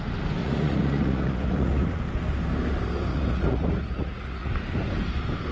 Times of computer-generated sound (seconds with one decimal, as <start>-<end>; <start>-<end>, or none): 0.4-2.0; 3.1-4.5